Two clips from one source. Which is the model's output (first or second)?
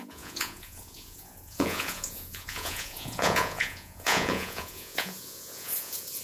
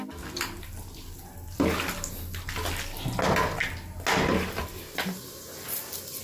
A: first